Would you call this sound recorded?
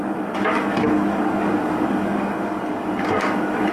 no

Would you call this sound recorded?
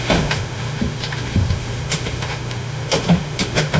no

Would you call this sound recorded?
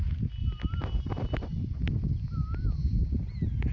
yes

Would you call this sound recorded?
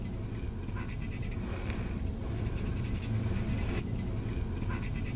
yes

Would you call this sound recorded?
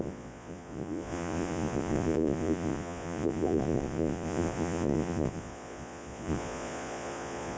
no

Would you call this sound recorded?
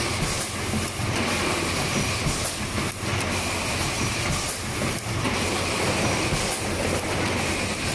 yes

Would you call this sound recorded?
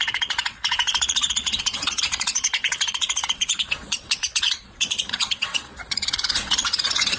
no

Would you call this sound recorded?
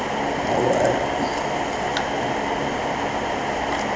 yes